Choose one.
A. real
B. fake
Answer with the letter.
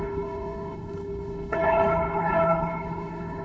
B